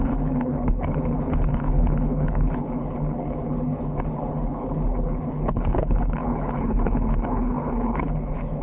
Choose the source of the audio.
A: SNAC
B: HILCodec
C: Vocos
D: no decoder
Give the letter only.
B